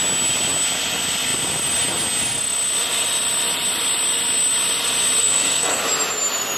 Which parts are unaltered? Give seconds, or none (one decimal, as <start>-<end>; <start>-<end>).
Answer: 0.0-5.2; 5.8-6.6